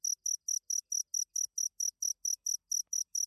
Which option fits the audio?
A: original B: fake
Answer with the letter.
A